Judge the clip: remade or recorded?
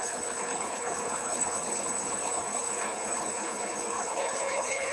remade